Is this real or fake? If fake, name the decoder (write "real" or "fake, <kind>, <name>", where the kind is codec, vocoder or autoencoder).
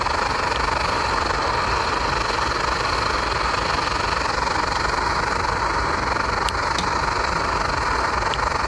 real